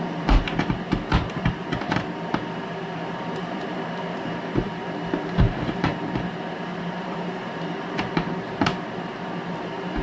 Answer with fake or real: fake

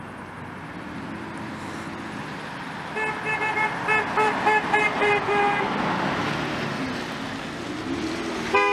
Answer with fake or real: real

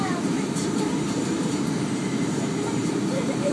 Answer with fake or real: fake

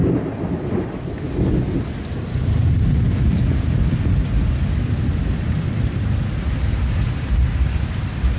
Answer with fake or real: real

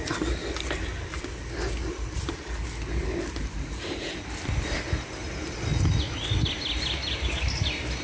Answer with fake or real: real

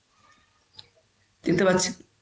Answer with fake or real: real